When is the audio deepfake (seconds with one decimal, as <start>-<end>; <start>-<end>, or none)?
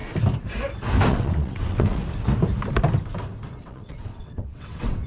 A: 1.1-2.0; 3.6-5.1